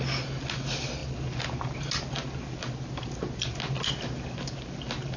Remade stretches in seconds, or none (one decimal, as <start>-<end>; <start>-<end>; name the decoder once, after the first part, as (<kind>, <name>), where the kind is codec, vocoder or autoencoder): none